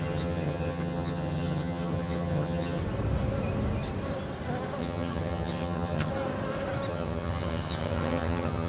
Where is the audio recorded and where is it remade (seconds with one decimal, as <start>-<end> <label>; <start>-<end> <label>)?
0.0-2.8 remade; 2.8-4.8 recorded; 4.8-6.1 remade; 6.1-6.9 recorded; 6.9-8.7 remade